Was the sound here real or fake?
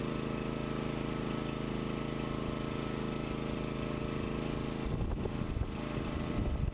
real